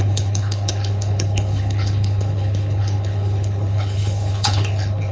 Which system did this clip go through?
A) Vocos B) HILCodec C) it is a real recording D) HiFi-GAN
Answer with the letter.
B